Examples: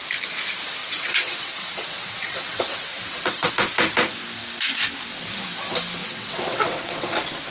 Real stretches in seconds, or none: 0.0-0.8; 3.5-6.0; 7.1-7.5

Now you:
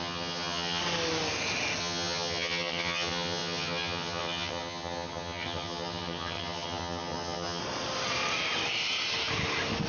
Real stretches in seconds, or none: 0.8-1.8; 7.6-9.9

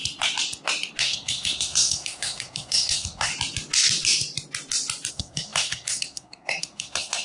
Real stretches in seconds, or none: 0.0-1.0; 3.3-5.1

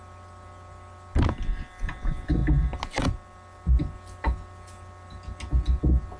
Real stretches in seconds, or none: 0.0-6.2

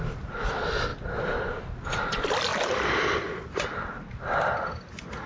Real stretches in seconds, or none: 0.0-5.3